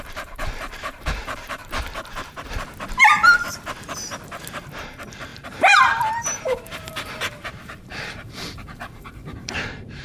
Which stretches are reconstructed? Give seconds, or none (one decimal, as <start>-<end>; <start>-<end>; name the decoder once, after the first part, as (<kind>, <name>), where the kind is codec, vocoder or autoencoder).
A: 0.0-1.6 (vocoder, BigVGAN v2); 4.8-10.0